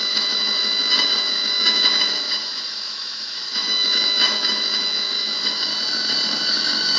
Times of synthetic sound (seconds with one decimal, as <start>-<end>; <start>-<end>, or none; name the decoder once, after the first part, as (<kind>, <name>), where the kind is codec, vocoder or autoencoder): 0.0-5.7 (autoencoder, DAC-VAE); 6.5-7.0